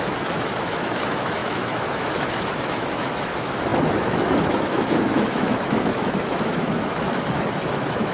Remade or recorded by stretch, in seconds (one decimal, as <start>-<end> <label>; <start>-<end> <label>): 0.0-8.1 remade